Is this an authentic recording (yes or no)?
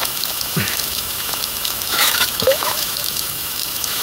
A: no